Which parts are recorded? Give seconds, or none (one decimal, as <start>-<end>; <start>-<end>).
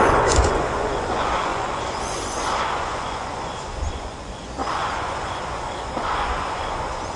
none